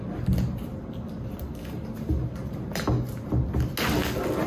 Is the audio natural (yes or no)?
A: yes